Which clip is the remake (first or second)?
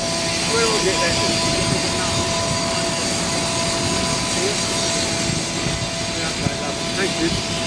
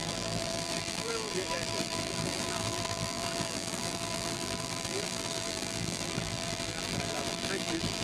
second